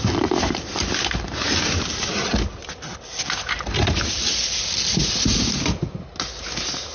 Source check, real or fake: real